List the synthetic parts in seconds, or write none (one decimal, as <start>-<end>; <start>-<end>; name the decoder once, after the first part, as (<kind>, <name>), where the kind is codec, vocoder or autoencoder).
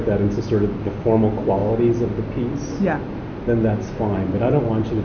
none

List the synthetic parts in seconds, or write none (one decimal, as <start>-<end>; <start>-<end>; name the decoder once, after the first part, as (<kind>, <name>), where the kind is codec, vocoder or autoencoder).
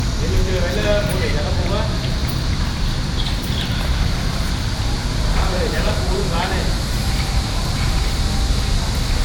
2.2-4.4 (vocoder, BigVGAN v2); 5.0-8.2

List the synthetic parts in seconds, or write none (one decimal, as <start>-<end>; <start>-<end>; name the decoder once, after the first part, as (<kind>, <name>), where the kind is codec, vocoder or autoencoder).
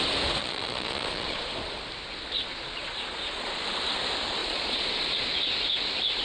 0.4-1.4 (vocoder, Vocos); 2.5-3.6; 4.4-5.3